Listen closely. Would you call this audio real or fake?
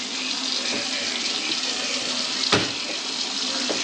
real